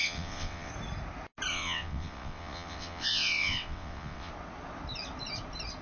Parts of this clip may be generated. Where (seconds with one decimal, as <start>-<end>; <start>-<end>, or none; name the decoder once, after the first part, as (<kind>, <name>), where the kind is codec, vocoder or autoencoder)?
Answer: 0.0-0.7 (vocoder, WaveNeXt); 1.5-4.3